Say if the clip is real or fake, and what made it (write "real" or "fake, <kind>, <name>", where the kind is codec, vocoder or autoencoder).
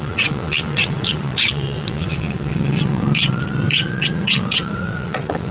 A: fake, vocoder, WaveNeXt